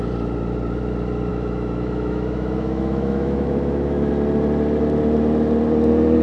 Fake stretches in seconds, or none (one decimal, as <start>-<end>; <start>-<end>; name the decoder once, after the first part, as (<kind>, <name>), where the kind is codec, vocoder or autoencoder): 1.3-4.1 (autoencoder, DAC-VAE)